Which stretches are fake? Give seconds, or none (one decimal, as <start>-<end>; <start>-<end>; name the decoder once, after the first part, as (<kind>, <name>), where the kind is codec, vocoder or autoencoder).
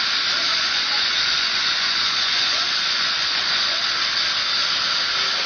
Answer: 0.5-3.8 (vocoder, Vocos)